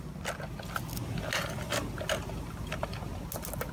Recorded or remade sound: recorded